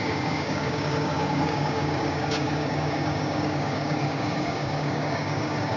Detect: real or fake fake